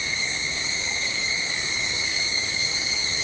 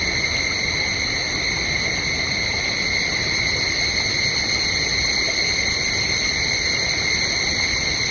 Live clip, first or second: second